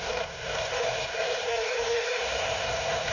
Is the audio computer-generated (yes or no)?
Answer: yes